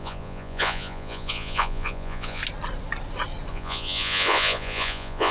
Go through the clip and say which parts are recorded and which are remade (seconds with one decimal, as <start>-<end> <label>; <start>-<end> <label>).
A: 0.0-2.4 remade; 2.4-3.5 recorded; 3.5-5.3 remade